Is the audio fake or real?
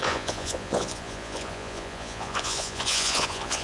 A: fake